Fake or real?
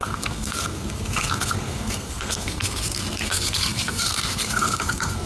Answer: fake